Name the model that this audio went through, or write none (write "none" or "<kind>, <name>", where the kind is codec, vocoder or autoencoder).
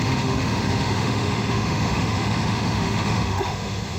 autoencoder, DAC-VAE